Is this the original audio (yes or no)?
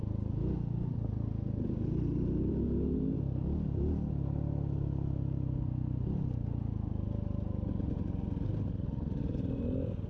yes